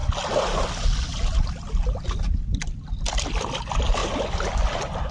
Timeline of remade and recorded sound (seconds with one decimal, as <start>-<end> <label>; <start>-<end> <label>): 0.0-3.1 recorded; 3.1-4.0 remade; 4.0-5.1 recorded